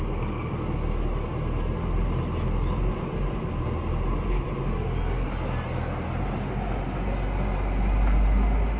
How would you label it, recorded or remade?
recorded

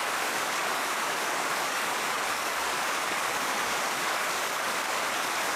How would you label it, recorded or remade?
remade